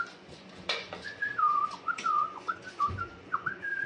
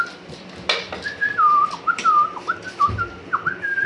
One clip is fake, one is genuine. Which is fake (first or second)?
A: first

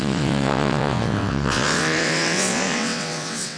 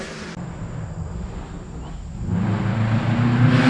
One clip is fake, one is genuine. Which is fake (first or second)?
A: first